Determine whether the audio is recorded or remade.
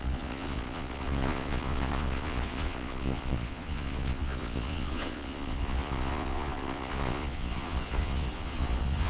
remade